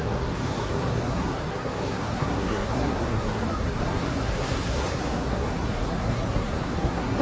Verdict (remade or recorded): remade